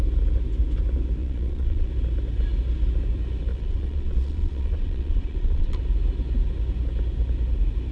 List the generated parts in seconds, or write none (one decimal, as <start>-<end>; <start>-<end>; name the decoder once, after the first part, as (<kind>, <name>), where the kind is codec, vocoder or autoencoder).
1.2-1.9 (vocoder, Vocos); 3.5-5.8